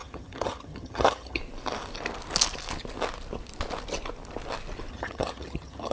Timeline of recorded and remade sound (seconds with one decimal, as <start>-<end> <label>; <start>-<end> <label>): 0.0-1.4 remade; 1.4-4.9 recorded; 4.9-5.9 remade